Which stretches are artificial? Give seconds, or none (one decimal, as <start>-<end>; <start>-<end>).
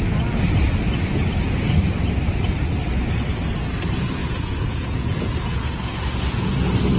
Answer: 4.2-6.5